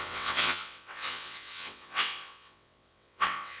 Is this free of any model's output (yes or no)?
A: no